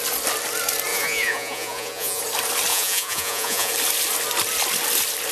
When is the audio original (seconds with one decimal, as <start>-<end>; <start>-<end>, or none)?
0.0-0.9; 2.2-2.7; 3.7-5.3